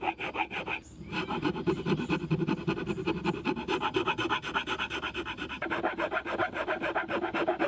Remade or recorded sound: recorded